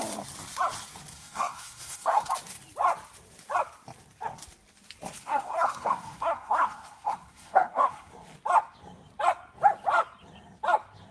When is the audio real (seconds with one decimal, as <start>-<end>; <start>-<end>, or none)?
0.0-1.1; 2.3-5.2; 8.1-11.1